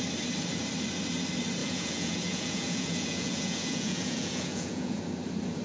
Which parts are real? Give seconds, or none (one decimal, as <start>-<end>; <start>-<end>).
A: 0.0-1.6; 5.0-5.6